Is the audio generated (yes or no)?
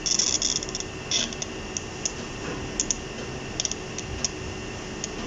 no